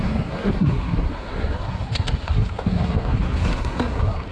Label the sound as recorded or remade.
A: remade